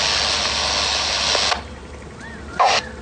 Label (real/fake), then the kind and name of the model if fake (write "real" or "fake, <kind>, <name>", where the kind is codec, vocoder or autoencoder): real